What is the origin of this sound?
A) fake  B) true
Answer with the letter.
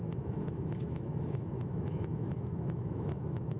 A